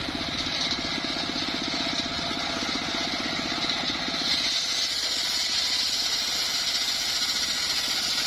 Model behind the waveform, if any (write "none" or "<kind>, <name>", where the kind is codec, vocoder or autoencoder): none